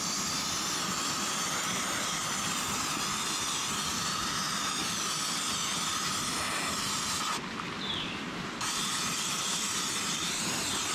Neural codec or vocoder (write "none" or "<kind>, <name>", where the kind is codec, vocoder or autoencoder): none